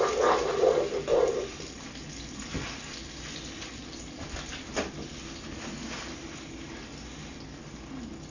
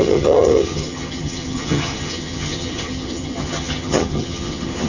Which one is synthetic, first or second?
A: second